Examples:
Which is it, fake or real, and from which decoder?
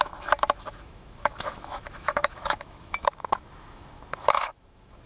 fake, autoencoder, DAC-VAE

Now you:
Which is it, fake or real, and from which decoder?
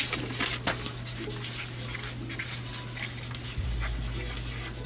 real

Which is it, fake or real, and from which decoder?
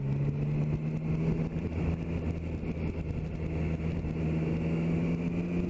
real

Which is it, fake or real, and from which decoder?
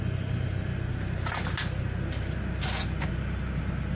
real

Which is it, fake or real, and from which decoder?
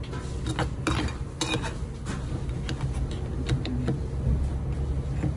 real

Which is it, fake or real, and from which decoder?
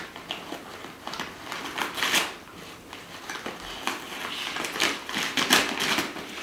real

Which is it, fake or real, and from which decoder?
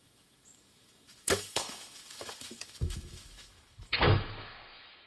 fake, autoencoder, DAC-VAE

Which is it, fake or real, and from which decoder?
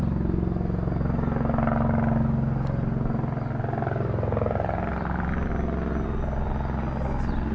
real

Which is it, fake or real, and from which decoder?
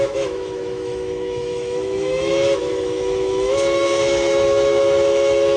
fake, autoencoder, DAC-VAE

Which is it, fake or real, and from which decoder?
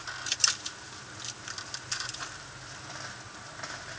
real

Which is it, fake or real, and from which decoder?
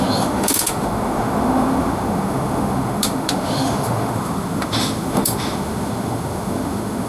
fake, autoencoder, DAC-VAE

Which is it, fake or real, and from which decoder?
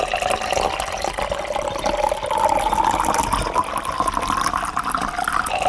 real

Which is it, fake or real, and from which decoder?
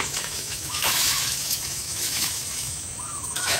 fake, autoencoder, DAC-VAE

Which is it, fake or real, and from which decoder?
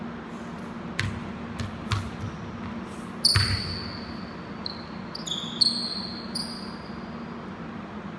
real